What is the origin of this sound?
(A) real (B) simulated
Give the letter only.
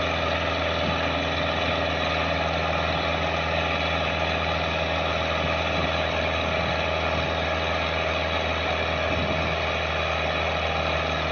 A